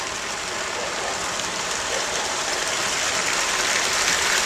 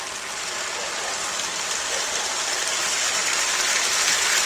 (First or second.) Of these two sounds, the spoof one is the first